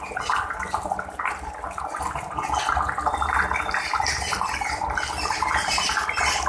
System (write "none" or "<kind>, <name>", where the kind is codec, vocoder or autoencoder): none